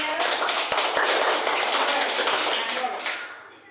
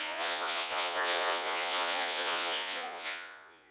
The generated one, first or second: second